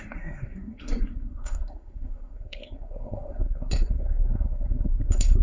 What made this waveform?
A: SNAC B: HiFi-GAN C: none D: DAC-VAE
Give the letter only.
A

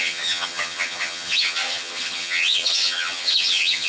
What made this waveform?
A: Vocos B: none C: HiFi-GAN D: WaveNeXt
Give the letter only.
C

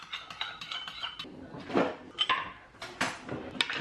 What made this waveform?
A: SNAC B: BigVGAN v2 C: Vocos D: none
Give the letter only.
D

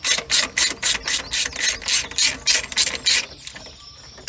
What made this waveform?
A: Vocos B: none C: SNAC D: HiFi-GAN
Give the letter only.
B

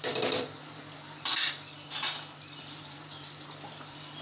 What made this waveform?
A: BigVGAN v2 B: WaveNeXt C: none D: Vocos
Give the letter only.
A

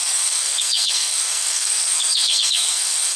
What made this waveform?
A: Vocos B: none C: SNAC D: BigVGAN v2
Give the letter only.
C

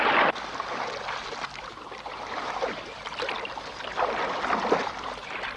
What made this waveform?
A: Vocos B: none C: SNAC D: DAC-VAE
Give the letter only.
B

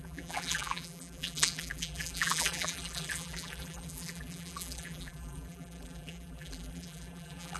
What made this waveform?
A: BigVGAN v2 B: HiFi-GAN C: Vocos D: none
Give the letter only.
A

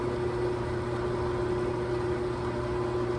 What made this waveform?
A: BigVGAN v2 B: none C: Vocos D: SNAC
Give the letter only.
B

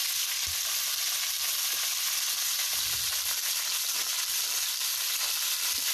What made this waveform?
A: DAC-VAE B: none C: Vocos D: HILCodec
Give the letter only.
B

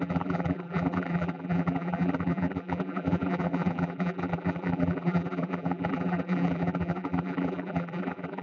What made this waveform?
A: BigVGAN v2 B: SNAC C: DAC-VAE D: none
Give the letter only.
A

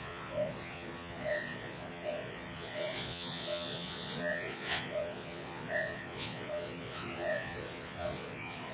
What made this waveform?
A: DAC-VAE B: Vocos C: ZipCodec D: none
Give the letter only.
B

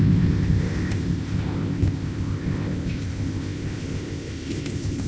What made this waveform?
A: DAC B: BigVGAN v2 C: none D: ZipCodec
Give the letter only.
D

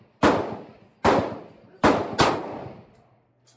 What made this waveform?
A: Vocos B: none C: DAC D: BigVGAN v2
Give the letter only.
B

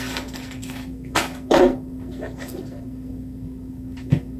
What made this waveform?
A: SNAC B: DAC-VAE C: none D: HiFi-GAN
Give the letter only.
A